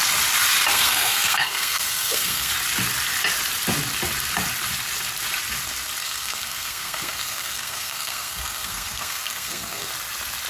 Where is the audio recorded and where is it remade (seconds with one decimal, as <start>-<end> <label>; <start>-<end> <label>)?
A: 0.0-0.7 recorded; 0.7-2.5 remade; 2.5-6.0 recorded; 6.0-9.9 remade; 9.9-10.5 recorded

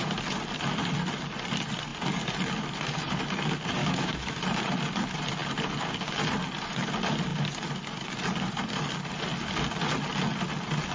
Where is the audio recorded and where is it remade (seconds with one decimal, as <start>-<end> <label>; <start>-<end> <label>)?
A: 0.0-3.8 recorded; 3.8-4.4 remade; 4.4-10.9 recorded

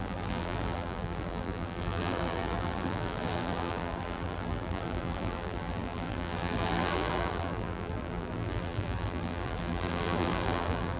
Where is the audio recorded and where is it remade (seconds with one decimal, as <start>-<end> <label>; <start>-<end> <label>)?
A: 0.0-11.0 remade

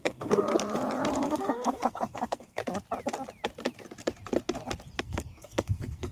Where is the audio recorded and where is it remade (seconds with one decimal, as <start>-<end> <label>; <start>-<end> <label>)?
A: 0.0-0.5 remade; 0.5-1.2 recorded; 1.2-2.6 remade; 2.6-5.0 recorded; 5.0-6.1 remade

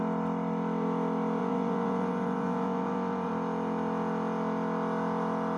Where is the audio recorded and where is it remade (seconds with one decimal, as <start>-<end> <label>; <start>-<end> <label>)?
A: 0.0-1.4 recorded; 1.4-3.3 remade; 3.3-5.6 recorded

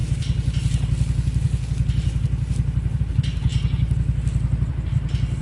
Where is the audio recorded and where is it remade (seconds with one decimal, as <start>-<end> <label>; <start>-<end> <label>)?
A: 0.0-5.4 recorded

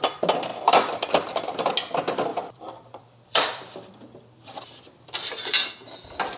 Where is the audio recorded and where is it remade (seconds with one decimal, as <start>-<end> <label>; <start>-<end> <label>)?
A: 0.0-0.5 recorded; 0.5-1.7 remade; 1.7-2.3 recorded; 2.3-5.7 remade; 5.7-6.4 recorded

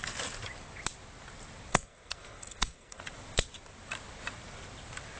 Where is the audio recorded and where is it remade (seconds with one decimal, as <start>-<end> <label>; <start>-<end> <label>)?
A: 0.0-1.7 recorded; 1.7-3.0 remade; 3.0-5.2 recorded